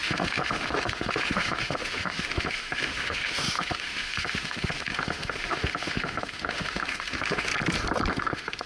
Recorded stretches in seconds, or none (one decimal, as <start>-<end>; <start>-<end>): 7.5-8.1